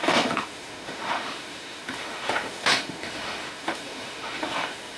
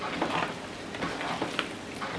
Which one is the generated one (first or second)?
first